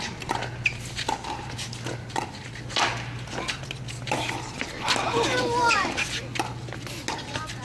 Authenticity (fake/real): real